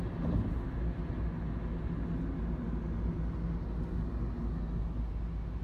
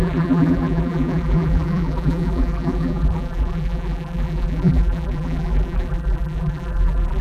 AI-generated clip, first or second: second